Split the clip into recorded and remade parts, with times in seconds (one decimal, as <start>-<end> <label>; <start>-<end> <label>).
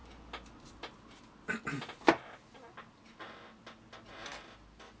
0.0-5.0 recorded